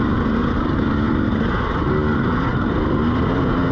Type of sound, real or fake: real